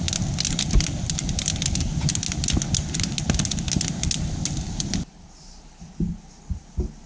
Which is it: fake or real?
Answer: real